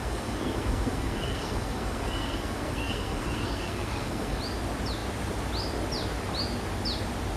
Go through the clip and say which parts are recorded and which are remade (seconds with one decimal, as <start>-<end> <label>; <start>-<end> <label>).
0.0-4.4 remade; 4.4-7.4 recorded